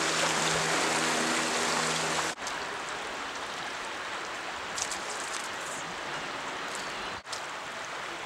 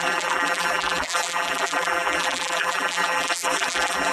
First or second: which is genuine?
first